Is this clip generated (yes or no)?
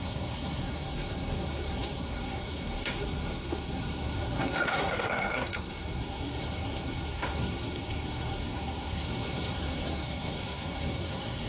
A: yes